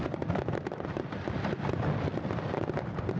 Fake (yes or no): no